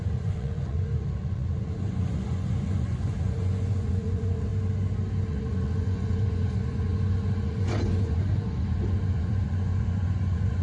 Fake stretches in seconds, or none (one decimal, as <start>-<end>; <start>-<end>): 0.0-4.5; 5.3-10.6